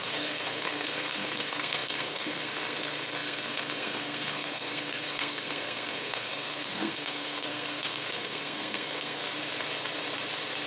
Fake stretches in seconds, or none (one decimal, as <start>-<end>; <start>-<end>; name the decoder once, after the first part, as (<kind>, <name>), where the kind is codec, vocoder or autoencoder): 0.0-9.2 (codec, SNAC)